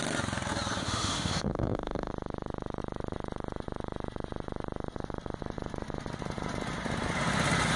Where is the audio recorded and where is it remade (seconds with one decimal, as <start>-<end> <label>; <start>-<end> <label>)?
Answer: 0.0-0.8 recorded; 0.8-2.1 remade; 2.1-7.8 recorded